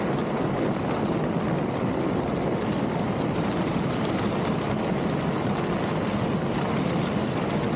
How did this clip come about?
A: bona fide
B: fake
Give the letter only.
A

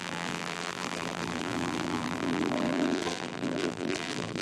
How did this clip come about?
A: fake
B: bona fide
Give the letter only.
A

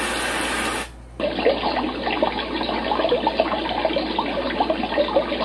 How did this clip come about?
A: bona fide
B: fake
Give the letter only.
A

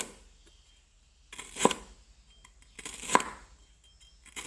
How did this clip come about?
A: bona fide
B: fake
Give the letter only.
A